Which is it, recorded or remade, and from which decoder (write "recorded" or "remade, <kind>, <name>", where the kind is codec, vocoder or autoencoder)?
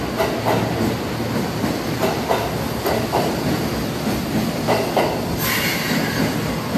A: recorded